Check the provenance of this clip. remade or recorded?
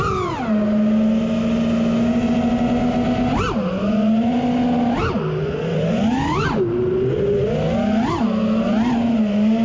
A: recorded